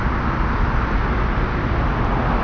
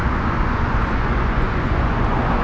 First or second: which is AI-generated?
second